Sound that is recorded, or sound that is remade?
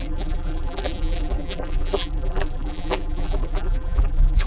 remade